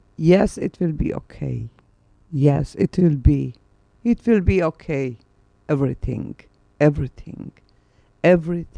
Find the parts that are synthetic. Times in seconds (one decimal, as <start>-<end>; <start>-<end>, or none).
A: 1.6-2.6